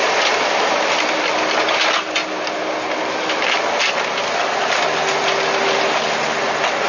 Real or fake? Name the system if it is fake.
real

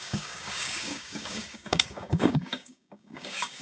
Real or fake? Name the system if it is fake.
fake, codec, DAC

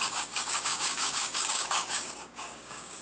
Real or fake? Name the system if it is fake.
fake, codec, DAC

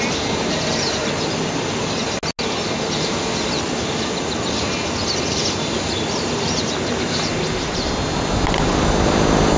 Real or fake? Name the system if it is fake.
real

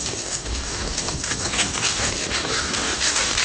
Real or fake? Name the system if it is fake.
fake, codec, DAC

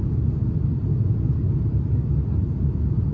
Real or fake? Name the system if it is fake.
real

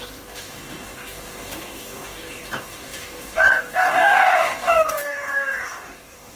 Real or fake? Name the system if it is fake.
fake, codec, DAC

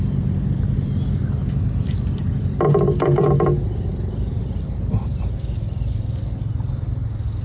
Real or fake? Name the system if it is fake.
real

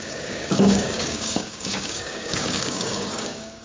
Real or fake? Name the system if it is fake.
fake, codec, DAC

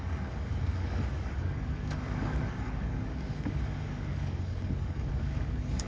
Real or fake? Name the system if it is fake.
fake, codec, DAC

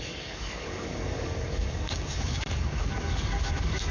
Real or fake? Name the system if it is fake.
fake, codec, DAC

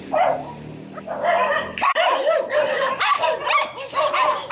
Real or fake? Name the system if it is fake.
real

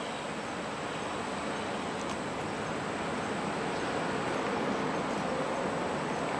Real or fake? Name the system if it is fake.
real